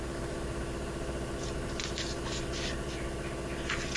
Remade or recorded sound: recorded